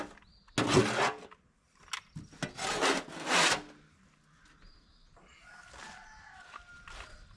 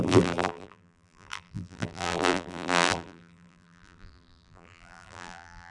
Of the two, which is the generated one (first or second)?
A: second